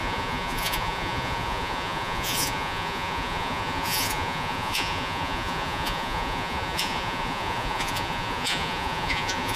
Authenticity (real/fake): fake